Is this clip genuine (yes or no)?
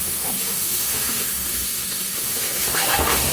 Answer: no